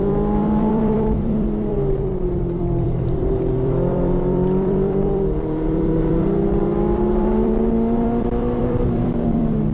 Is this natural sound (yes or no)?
no